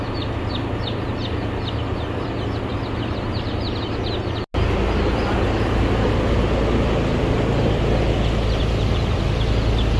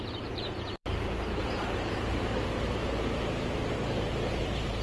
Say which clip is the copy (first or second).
second